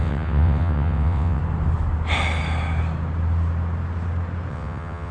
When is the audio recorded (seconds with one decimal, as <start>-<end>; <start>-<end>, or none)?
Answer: 1.4-4.5